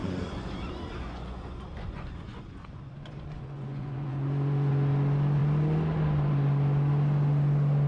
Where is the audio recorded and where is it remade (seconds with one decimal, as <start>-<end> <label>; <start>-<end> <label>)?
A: 0.0-4.7 remade; 4.7-7.9 recorded